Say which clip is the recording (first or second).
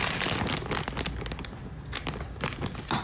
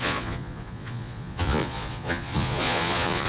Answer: first